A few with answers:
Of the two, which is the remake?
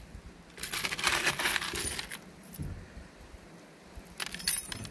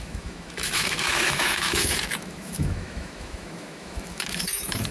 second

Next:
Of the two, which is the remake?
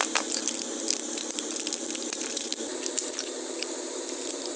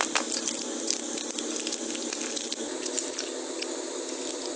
first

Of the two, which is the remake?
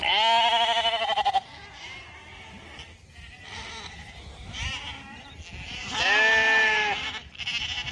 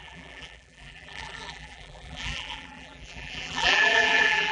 second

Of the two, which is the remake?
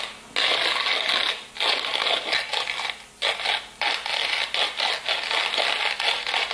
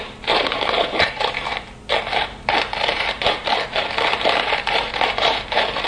second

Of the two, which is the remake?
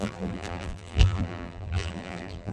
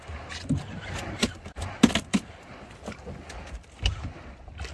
first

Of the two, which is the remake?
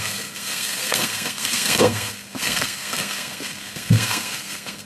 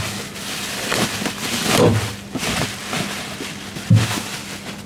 first